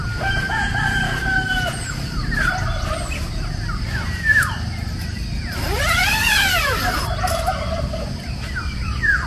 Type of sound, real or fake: fake